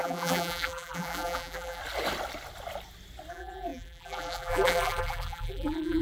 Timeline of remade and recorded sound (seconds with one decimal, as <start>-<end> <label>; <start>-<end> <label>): 0.0-1.8 remade; 1.8-3.3 recorded; 3.3-6.0 remade